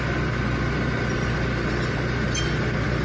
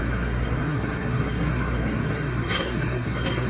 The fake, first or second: second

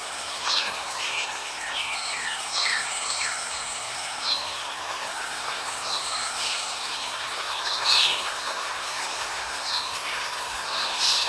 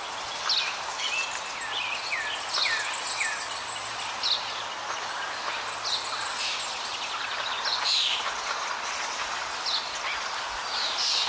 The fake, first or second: first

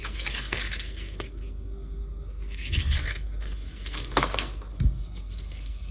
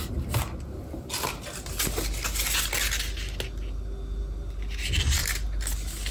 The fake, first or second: first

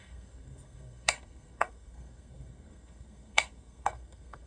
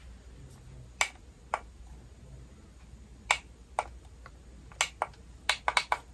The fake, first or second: first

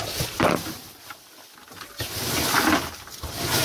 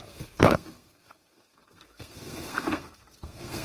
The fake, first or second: second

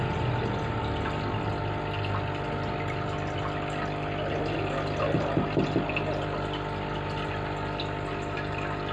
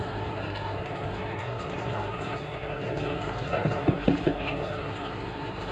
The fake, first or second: second